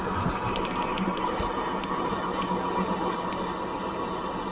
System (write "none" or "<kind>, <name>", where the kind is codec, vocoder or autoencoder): none